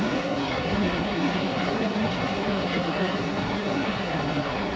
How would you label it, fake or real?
fake